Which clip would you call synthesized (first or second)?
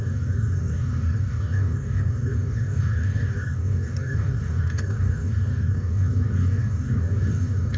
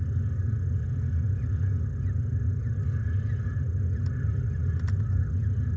first